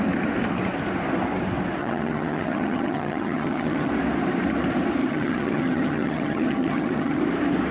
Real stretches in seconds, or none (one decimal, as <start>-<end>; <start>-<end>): 0.0-1.8; 3.9-5.0; 7.2-7.7